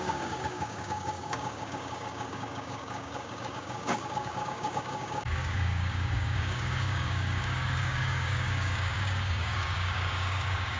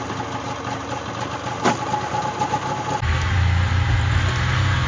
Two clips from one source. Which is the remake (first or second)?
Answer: first